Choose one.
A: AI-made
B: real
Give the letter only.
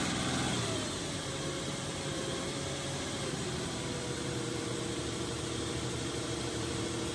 A